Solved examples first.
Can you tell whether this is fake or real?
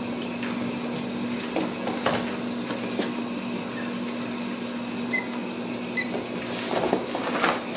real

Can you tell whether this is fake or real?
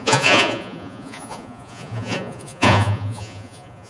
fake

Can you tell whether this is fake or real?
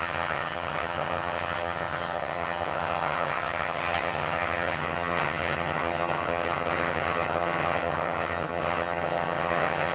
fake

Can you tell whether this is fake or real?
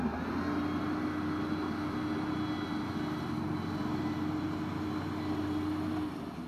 real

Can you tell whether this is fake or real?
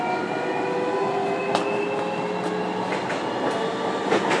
real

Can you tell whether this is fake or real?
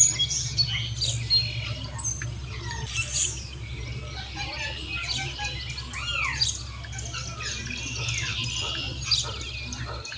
real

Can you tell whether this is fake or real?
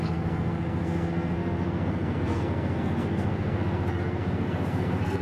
fake